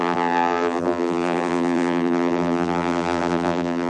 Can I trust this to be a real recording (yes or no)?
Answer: no